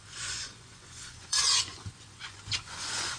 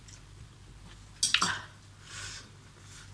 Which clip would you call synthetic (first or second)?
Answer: first